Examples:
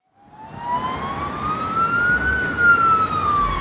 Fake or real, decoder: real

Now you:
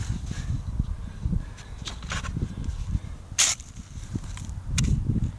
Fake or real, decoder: real